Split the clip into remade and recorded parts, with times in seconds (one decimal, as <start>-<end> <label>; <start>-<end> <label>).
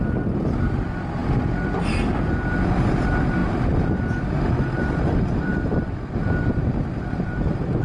0.0-7.8 remade